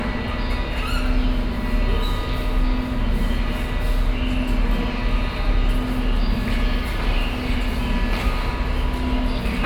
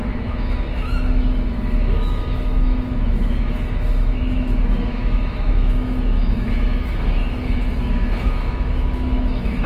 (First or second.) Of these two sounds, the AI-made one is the second